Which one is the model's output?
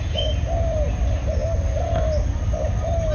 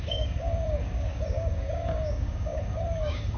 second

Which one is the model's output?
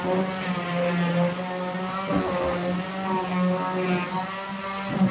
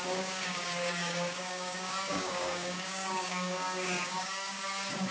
second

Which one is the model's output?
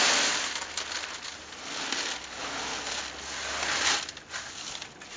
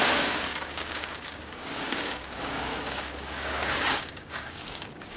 second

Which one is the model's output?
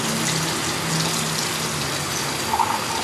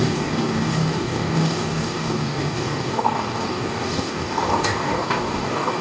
second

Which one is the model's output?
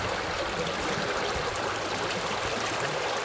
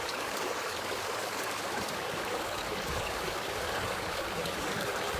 second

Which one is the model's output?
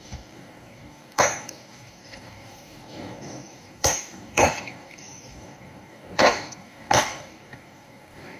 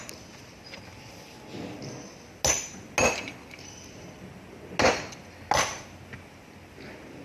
first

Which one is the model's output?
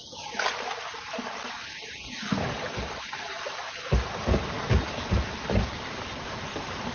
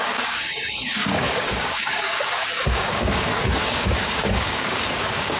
second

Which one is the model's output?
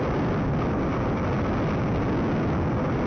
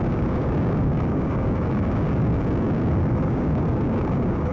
second